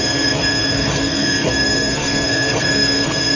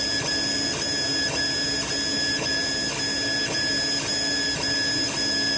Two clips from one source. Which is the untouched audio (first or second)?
second